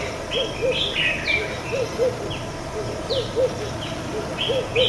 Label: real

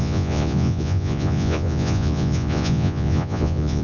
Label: fake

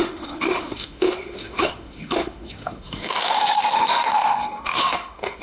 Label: fake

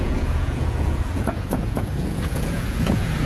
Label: fake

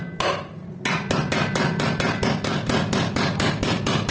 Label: real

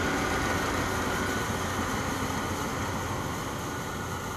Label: real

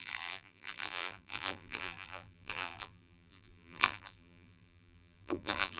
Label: fake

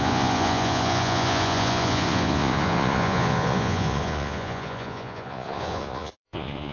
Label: fake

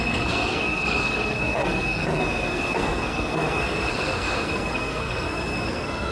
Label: fake